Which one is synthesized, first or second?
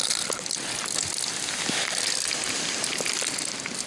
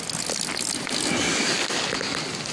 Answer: first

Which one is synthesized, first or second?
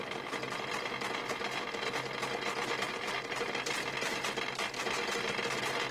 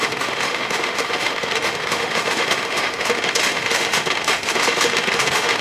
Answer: second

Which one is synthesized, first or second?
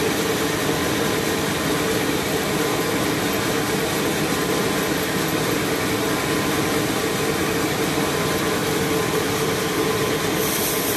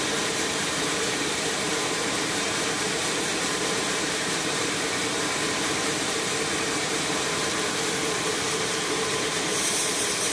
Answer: second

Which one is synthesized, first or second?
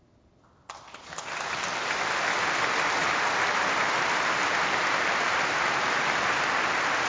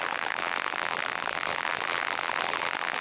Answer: second